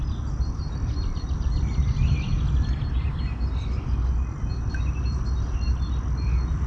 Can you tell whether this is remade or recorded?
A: recorded